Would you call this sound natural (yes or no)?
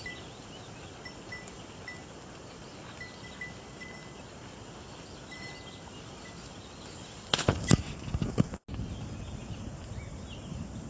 yes